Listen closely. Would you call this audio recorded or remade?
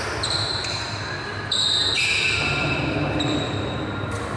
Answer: remade